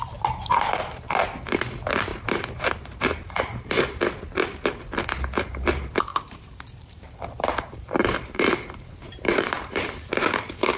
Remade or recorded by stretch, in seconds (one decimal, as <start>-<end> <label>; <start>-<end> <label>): 0.0-2.1 recorded; 2.1-4.0 remade; 4.0-6.1 recorded; 6.1-10.8 remade